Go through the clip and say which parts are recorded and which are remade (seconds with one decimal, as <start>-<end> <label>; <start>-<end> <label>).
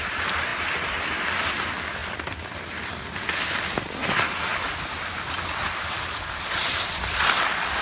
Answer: 0.0-7.8 recorded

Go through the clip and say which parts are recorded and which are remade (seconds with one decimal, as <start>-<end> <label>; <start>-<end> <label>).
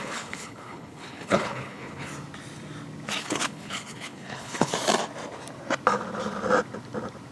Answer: 0.0-2.1 remade; 2.1-3.2 recorded; 3.2-4.7 remade; 4.7-7.3 recorded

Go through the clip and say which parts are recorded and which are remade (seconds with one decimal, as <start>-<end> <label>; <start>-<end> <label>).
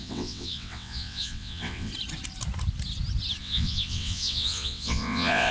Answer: 0.0-1.9 remade; 1.9-3.4 recorded; 3.4-5.5 remade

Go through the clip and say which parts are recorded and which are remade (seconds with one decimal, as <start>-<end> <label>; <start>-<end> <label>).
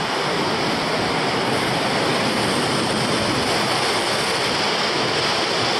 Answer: 0.0-5.8 remade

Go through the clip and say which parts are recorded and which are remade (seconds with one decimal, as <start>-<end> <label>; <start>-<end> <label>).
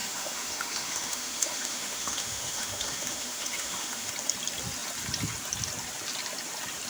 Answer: 0.0-4.1 remade; 4.1-6.9 recorded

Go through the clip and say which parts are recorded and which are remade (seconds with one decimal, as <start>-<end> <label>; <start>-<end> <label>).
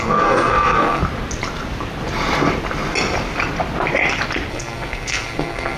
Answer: 0.0-1.0 remade; 1.0-4.5 recorded; 4.5-5.8 remade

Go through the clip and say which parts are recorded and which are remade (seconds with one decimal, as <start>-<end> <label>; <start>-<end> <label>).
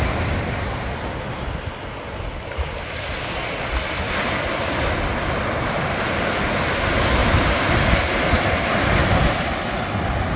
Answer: 0.0-7.2 recorded; 7.2-7.7 remade; 7.7-10.4 recorded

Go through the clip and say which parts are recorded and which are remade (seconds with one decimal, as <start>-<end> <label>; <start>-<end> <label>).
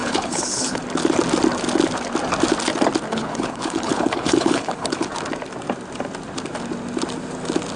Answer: 0.0-0.8 remade; 0.8-3.1 recorded; 3.1-5.1 remade; 5.1-7.8 recorded